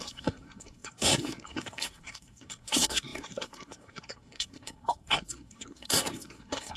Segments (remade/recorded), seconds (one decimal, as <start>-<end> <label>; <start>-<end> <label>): 0.0-6.8 remade